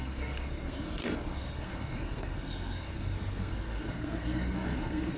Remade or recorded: remade